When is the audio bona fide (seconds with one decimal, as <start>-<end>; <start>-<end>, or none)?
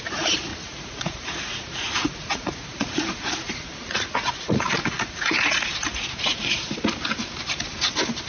0.0-0.5; 5.5-5.9; 6.6-8.3